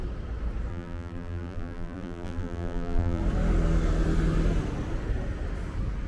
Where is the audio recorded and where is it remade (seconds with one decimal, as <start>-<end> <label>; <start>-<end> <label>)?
0.0-0.7 recorded; 0.7-3.2 remade; 3.2-6.1 recorded